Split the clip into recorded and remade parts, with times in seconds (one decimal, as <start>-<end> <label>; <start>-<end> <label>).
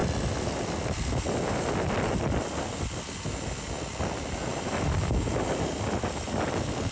0.0-6.9 recorded